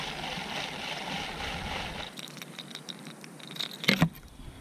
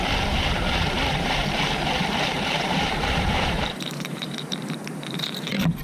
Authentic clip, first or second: first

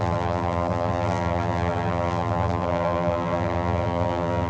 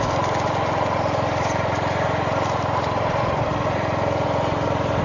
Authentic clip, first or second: second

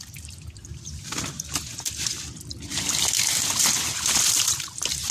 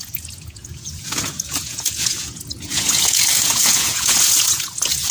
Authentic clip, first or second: first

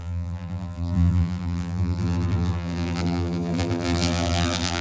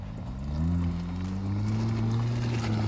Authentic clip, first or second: second